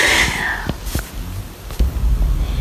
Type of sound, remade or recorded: recorded